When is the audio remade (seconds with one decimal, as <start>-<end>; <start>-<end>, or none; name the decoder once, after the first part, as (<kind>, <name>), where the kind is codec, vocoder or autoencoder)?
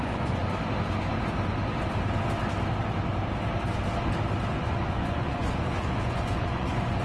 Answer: 0.0-0.4 (vocoder, Vocos); 4.6-7.0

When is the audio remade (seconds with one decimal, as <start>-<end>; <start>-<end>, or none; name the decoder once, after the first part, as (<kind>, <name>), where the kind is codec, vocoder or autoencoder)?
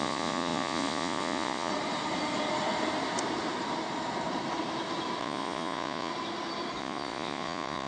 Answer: 0.0-1.7 (vocoder, Vocos); 5.2-6.1; 6.8-7.9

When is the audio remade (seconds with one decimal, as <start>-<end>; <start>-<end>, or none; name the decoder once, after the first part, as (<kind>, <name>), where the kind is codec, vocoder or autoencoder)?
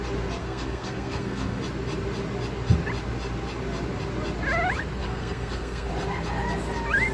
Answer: 0.4-1.6 (codec, SNAC); 5.0-5.9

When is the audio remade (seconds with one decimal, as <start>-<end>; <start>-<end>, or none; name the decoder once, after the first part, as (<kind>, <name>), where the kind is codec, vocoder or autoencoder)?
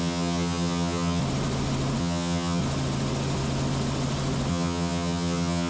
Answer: 0.0-1.2 (vocoder, HiFi-GAN); 2.0-2.6; 4.5-5.7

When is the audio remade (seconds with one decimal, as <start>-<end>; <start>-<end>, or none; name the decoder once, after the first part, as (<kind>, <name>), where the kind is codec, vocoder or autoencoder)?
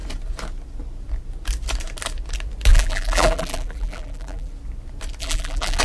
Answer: 2.7-4.5 (vocoder, BigVGAN v2); 5.2-5.8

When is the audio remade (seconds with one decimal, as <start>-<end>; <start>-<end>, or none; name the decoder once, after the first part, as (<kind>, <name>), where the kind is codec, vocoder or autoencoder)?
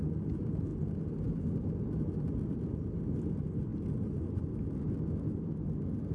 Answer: none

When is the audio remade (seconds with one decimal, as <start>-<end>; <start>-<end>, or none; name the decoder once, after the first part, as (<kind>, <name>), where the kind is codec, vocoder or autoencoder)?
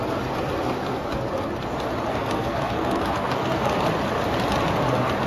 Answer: 2.1-3.7 (codec, SNAC)